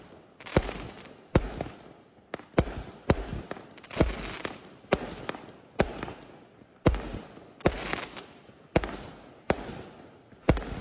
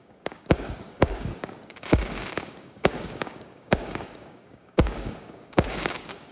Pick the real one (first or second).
first